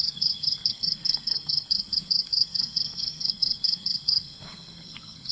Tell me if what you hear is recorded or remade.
remade